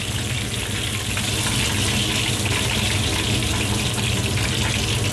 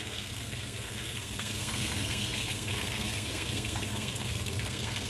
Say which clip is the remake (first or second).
second